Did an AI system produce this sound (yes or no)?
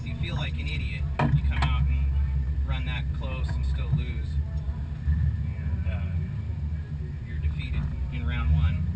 no